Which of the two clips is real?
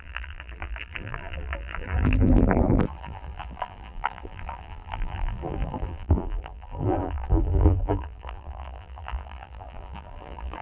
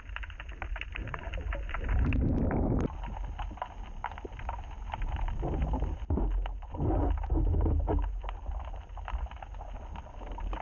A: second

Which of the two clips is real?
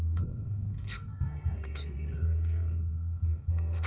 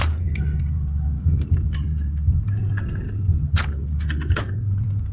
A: second